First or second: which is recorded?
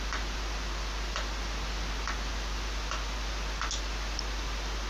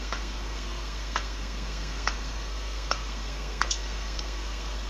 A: first